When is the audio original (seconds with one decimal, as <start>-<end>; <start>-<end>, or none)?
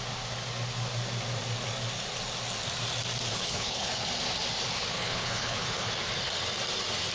0.0-3.3; 4.1-4.9; 5.9-7.1